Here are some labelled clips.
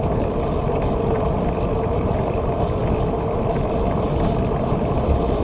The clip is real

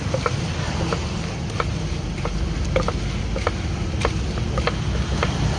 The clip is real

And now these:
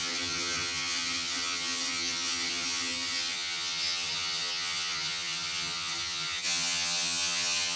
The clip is fake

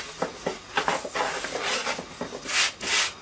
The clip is real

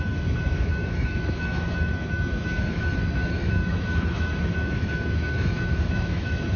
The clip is fake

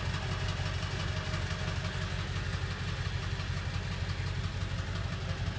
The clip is real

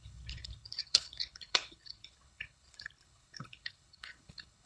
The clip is fake